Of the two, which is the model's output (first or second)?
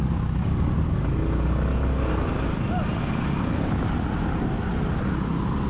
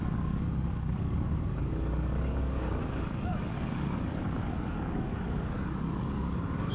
second